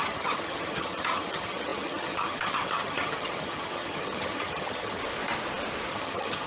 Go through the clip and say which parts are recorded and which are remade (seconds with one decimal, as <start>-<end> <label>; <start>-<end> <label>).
0.0-5.0 remade; 5.0-5.9 recorded; 5.9-6.5 remade